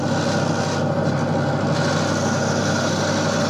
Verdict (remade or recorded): recorded